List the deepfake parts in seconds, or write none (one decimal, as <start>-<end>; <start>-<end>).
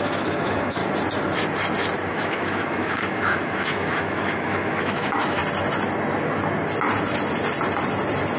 0.0-0.8; 2.1-5.4